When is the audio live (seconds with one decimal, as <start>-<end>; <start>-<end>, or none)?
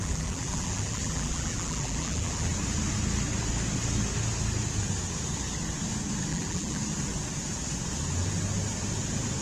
2.5-6.3; 6.8-9.4